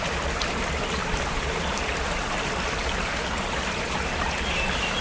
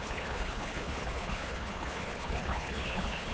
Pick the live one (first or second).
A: first